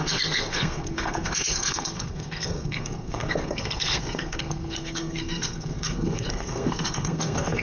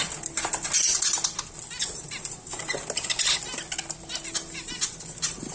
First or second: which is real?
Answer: second